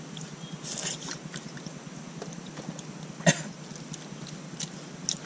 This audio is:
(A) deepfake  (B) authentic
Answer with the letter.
B